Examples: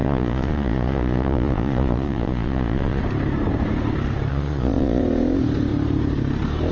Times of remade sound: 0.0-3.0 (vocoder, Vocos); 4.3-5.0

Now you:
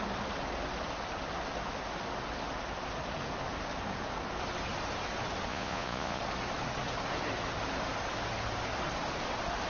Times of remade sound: 5.5-6.2 (vocoder, Vocos)

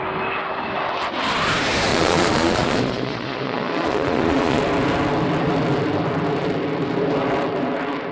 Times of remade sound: 1.9-4.6 (vocoder, Vocos)

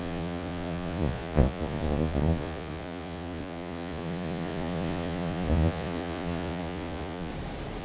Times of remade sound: 0.0-7.3 (vocoder, Vocos)

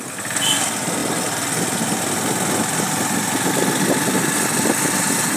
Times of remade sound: none

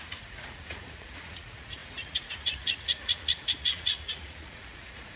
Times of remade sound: 0.0-5.2 (vocoder, Vocos)

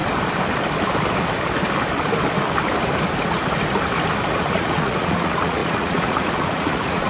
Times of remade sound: 4.3-7.1 (vocoder, Vocos)